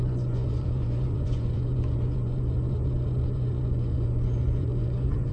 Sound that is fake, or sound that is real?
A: fake